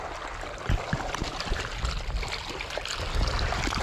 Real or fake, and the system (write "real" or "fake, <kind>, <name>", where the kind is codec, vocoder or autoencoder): real